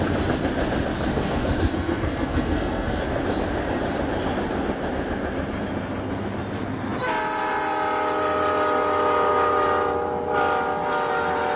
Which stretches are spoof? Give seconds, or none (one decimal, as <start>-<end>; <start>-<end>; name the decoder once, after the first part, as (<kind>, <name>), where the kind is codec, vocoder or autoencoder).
1.1-3.0 (codec, SNAC)

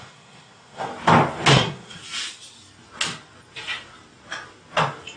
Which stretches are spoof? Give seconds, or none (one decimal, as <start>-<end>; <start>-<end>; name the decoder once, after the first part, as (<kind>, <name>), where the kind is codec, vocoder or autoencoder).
0.0-0.9 (codec, SNAC); 1.5-2.0

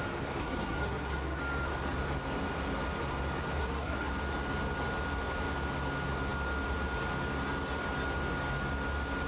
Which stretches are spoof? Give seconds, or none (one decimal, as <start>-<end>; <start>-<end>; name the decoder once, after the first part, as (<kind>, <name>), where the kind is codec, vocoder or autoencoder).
0.4-1.4 (codec, SNAC); 3.6-4.1

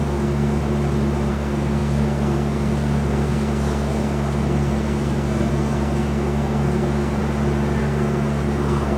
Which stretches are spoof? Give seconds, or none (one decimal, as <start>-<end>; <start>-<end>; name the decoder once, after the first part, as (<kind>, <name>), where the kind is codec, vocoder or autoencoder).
0.0-0.6 (codec, SNAC); 1.3-7.2; 7.8-9.0

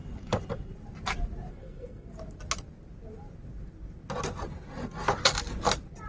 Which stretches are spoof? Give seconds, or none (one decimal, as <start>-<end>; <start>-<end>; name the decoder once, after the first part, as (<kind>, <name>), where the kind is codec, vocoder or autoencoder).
1.5-2.1 (codec, SNAC)

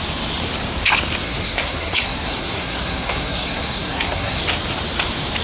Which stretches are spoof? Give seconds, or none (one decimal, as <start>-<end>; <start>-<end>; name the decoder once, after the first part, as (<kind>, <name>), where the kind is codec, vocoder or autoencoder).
1.2-4.4 (codec, SNAC)

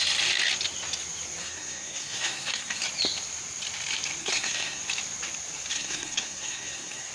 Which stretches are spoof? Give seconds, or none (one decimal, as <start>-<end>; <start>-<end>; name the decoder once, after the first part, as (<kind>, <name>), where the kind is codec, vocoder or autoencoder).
1.4-2.8 (codec, SNAC); 4.2-4.8; 5.7-7.1

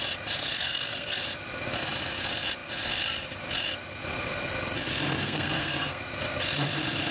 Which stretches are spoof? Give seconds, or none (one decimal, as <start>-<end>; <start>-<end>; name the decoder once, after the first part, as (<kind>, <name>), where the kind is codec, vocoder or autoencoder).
0.4-1.2 (codec, SNAC); 5.2-6.0